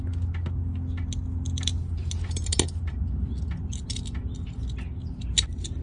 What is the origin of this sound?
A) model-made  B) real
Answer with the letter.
B